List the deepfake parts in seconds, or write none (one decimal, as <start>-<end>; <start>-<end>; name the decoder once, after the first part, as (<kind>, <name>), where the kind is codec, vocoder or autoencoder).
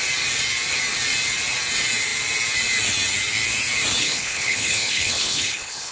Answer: 4.0-5.9 (codec, HILCodec)